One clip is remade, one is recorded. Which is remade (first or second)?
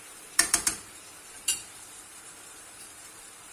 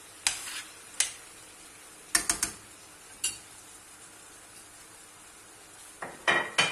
first